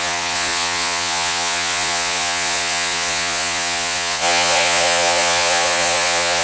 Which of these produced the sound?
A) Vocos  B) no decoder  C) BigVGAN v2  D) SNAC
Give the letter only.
A